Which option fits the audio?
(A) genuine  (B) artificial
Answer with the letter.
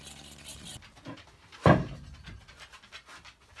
A